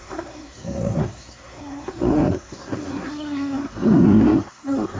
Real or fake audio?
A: fake